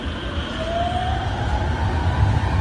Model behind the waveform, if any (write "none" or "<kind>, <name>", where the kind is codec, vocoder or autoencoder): none